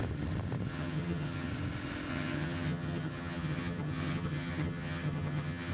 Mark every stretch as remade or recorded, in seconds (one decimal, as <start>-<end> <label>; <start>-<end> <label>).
0.0-0.7 recorded; 0.7-1.5 remade; 1.5-2.1 recorded; 2.1-5.7 remade